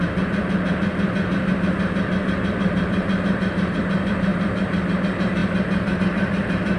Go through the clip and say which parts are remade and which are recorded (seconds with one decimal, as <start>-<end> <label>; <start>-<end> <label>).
0.0-0.9 remade; 0.9-1.5 recorded; 1.5-5.4 remade; 5.4-6.0 recorded; 6.0-6.8 remade